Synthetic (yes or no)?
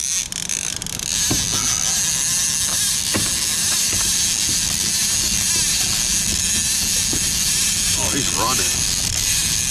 no